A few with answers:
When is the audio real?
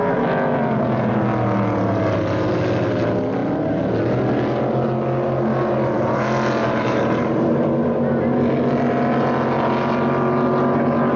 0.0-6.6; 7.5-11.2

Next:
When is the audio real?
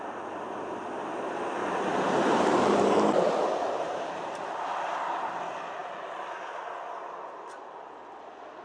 0.0-1.6; 4.5-8.6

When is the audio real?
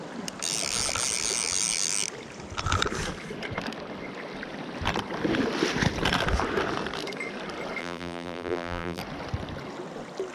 0.0-7.8; 9.0-10.3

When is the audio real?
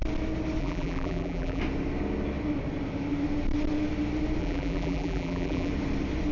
0.0-0.6; 1.6-4.4; 5.7-6.3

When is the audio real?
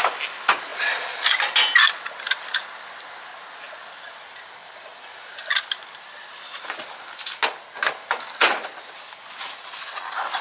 0.0-10.4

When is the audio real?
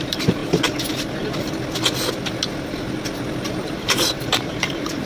0.4-3.5